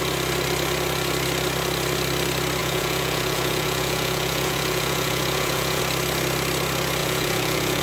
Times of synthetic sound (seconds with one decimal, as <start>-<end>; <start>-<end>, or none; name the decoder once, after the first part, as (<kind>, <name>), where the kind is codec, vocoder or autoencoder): 2.6-5.8 (vocoder, Vocos); 7.0-7.8